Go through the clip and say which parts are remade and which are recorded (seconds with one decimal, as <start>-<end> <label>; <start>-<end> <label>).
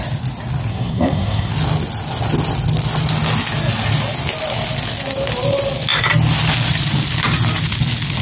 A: 0.0-0.7 recorded; 0.7-1.5 remade; 1.5-8.2 recorded